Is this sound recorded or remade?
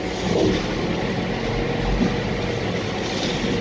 recorded